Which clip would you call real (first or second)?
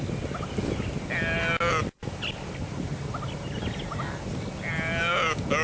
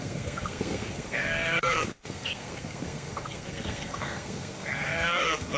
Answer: first